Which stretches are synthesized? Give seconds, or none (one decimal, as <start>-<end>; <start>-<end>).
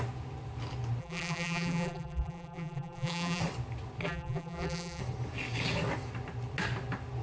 1.0-3.4; 4.0-5.0